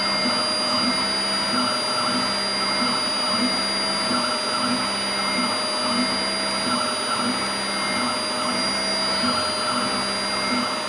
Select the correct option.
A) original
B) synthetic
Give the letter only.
A